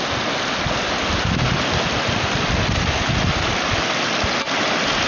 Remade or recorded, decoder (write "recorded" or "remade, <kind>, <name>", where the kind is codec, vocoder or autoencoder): recorded